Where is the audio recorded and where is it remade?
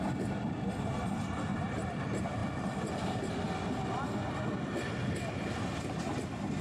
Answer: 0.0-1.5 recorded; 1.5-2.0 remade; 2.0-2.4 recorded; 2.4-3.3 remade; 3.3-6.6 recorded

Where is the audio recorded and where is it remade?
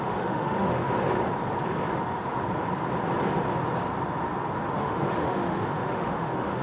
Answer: 0.0-0.8 remade; 0.8-4.8 recorded; 4.8-6.6 remade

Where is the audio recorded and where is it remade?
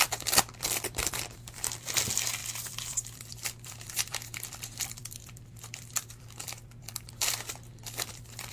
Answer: 0.0-8.5 remade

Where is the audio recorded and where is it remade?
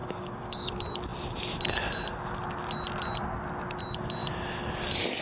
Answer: 0.0-0.7 remade; 0.7-5.2 recorded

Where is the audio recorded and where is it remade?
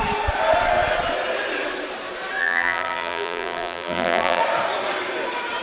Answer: 0.0-2.4 recorded; 2.4-4.4 remade; 4.4-5.6 recorded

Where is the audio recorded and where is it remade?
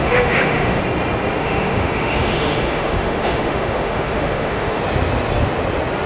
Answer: 0.0-0.8 remade; 0.8-1.4 recorded; 1.4-4.8 remade; 4.8-6.1 recorded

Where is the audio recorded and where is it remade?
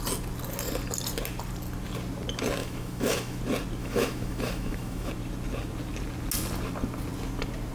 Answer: 0.0-2.6 recorded; 2.6-3.4 remade; 3.4-3.8 recorded; 3.8-5.1 remade; 5.1-7.7 recorded